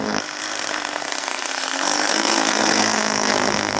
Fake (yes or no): yes